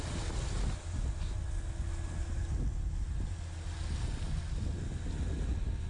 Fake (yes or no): no